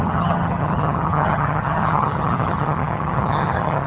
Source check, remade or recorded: remade